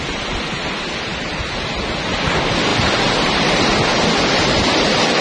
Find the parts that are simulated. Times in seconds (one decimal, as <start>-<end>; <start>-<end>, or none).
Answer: none